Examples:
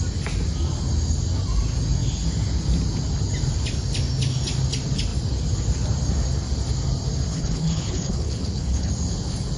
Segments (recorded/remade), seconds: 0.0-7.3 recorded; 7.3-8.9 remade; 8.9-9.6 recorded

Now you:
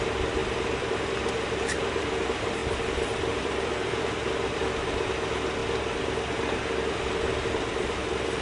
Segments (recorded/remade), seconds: 0.0-5.6 remade; 5.6-7.0 recorded; 7.0-8.4 remade